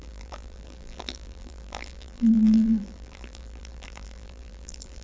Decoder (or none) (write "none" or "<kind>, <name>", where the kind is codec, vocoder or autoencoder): vocoder, BigVGAN v2